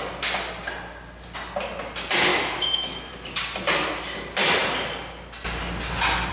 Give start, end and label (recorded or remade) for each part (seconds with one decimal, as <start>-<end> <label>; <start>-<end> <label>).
0.0-2.3 recorded; 2.3-3.1 remade; 3.1-6.3 recorded

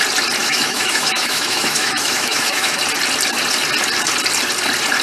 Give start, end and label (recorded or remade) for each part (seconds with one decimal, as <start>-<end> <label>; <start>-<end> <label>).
0.0-0.4 recorded; 0.4-2.8 remade; 2.8-5.0 recorded

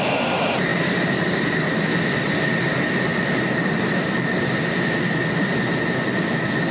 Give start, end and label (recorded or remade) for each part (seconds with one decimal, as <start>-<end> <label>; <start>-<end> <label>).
0.0-0.7 recorded; 0.7-2.6 remade; 2.6-3.1 recorded; 3.1-4.9 remade; 4.9-6.7 recorded

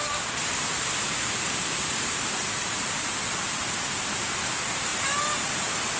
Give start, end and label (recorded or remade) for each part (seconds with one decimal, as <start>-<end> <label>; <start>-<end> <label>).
0.0-6.0 recorded

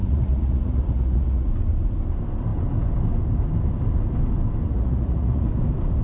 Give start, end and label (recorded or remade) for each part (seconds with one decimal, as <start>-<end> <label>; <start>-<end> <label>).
0.0-1.5 remade; 1.5-4.7 recorded; 4.7-5.5 remade; 5.5-6.0 recorded

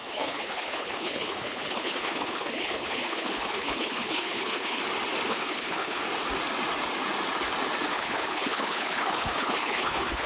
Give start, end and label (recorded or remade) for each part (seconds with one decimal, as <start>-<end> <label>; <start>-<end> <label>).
0.0-4.8 remade; 4.8-5.3 recorded; 5.3-6.0 remade; 6.0-7.9 recorded; 7.9-10.3 remade

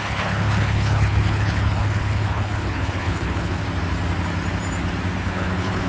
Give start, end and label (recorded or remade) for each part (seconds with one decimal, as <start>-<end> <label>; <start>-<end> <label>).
0.0-3.6 remade; 3.6-5.2 recorded; 5.2-5.9 remade